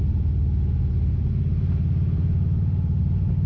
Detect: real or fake real